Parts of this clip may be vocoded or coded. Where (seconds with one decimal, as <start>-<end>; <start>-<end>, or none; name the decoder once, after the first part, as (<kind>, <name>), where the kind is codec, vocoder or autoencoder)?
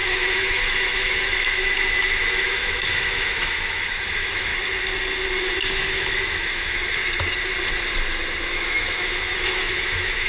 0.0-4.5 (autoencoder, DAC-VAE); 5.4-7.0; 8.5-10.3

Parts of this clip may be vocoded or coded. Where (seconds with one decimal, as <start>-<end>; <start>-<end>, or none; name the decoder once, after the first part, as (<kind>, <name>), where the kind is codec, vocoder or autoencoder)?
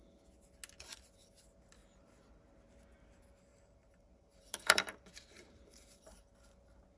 1.8-2.7 (vocoder, BigVGAN v2); 3.5-6.3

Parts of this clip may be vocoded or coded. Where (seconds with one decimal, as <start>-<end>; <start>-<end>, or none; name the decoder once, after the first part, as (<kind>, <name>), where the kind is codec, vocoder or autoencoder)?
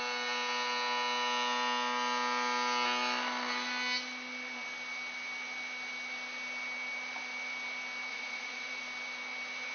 8.1-8.8 (vocoder, Vocos)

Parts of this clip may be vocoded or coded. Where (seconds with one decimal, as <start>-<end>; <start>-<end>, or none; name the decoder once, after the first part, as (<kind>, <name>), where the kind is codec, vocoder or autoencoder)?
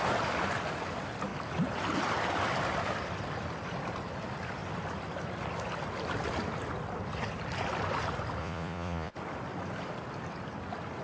8.4-9.1 (vocoder, Vocos)